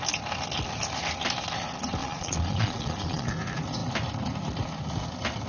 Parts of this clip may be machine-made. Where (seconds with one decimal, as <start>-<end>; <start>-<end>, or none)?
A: 2.0-3.3